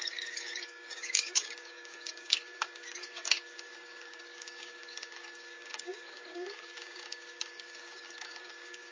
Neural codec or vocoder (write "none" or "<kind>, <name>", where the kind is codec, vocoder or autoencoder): codec, DAC